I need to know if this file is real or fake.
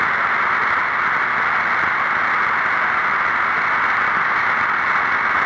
real